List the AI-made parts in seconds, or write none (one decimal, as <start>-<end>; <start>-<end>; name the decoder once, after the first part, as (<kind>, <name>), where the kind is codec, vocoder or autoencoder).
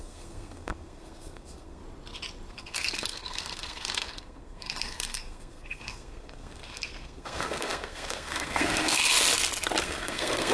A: 0.0-1.8 (codec, SNAC); 2.5-9.1; 9.8-10.5